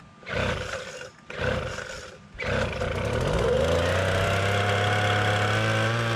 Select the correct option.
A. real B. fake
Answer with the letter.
A